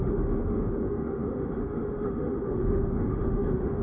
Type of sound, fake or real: fake